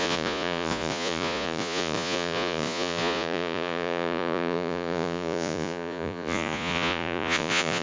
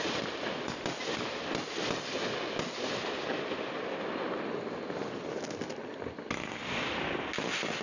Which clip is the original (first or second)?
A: second